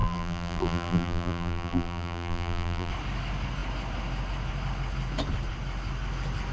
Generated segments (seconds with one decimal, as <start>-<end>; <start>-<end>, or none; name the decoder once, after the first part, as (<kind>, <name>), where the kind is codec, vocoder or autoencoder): 0.0-2.9 (vocoder, BigVGAN v2)